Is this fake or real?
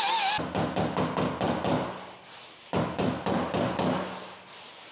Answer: real